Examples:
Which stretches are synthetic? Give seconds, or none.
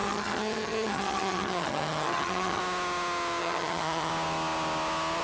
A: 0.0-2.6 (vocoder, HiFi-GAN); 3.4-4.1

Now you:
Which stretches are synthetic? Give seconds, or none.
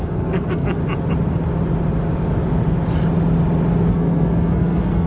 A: 0.0-0.8 (codec, SNAC); 3.9-5.1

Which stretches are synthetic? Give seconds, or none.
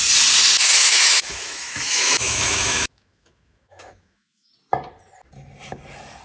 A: 0.8-4.5 (autoencoder, DAC-VAE)